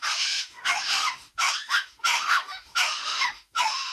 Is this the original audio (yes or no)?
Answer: no